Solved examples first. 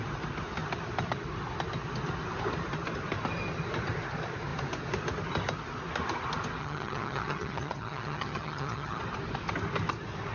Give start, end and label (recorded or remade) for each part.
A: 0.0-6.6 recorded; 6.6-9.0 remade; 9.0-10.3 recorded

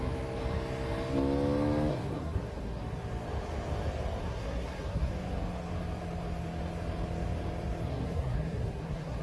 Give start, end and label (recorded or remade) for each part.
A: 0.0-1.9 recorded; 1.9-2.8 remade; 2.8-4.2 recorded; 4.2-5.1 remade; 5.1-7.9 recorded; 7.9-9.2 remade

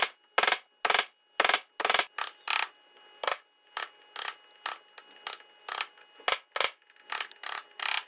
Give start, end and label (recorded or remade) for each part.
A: 0.0-8.1 recorded